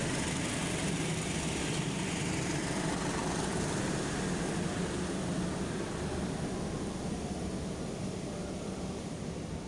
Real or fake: real